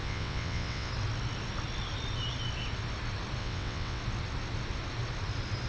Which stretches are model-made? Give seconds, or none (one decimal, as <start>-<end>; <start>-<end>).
0.0-0.9; 3.4-4.0